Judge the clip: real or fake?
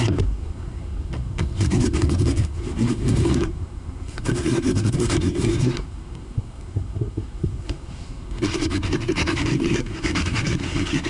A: fake